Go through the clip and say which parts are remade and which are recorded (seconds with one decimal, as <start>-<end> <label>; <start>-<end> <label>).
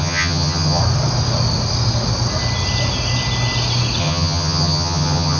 0.0-0.8 remade; 0.8-4.0 recorded; 4.0-5.4 remade